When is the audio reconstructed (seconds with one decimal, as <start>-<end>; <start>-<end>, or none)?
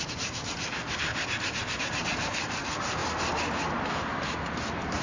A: 0.0-1.1; 1.8-3.0; 3.8-5.0